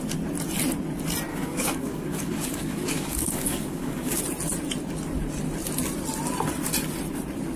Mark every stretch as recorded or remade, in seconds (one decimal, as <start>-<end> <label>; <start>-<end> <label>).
0.0-1.3 recorded; 1.3-4.2 remade; 4.2-7.6 recorded

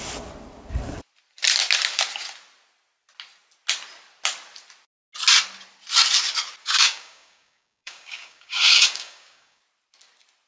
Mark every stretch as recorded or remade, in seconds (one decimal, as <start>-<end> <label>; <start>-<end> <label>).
0.0-6.6 recorded; 6.6-9.6 remade; 9.6-10.5 recorded

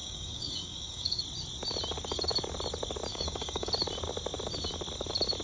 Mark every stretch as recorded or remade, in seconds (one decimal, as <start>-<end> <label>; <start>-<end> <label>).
0.0-1.2 remade; 1.2-3.1 recorded; 3.1-3.7 remade; 3.7-5.4 recorded

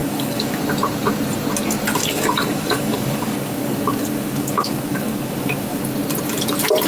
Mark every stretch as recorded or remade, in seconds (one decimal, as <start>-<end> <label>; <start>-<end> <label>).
0.0-0.6 remade; 0.6-2.0 recorded; 2.0-5.8 remade; 5.8-6.9 recorded

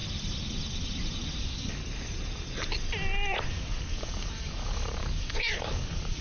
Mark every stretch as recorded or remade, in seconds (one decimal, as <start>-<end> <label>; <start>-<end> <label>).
0.0-1.4 recorded; 1.4-1.8 remade; 1.8-3.5 recorded; 3.5-6.2 remade

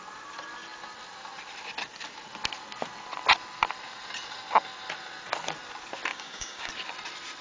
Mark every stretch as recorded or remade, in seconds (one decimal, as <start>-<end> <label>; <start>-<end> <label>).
0.0-6.1 recorded; 6.1-6.7 remade; 6.7-7.4 recorded